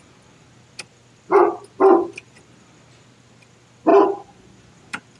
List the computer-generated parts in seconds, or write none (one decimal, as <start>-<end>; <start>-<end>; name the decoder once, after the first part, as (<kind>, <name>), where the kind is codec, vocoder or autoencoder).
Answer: 3.9-5.2 (vocoder, BigVGAN v2)